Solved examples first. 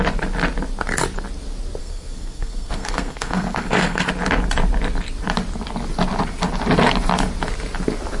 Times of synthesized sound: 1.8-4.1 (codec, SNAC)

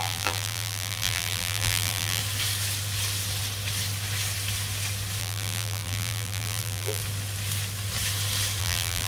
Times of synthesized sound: 0.0-2.2 (vocoder, BigVGAN v2); 5.2-7.0; 8.6-9.1

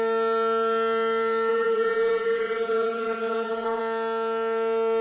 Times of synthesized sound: 1.5-3.8 (vocoder, BigVGAN v2)

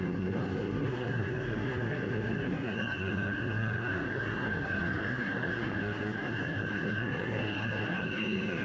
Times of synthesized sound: 0.0-8.6 (codec, SNAC)

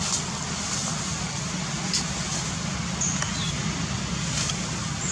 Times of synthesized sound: none

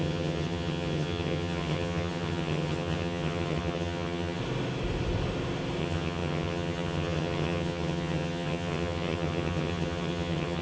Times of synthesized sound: 0.0-4.4 (vocoder, HiFi-GAN); 5.8-10.6

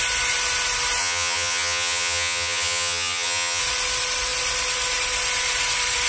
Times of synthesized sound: 1.0-3.6 (vocoder, HiFi-GAN)